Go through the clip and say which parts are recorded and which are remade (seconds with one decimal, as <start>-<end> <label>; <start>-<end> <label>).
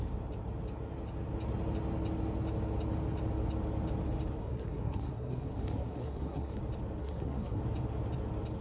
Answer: 0.0-4.4 recorded; 4.4-6.6 remade; 6.6-7.0 recorded; 7.0-7.6 remade; 7.6-8.6 recorded